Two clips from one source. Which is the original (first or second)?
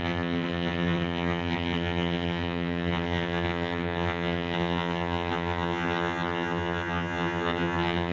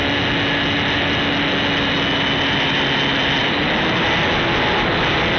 second